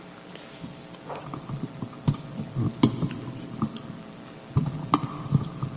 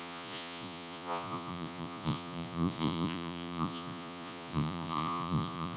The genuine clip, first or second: first